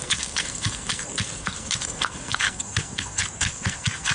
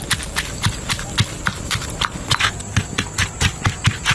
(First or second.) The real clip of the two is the second